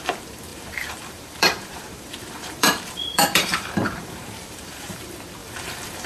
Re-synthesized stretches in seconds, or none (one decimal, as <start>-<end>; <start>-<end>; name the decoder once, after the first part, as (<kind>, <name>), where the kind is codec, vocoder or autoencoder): 0.0-6.1 (vocoder, BigVGAN v2)